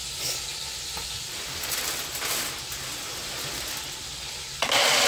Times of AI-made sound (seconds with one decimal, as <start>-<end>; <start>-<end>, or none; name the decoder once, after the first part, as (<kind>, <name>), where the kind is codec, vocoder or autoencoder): none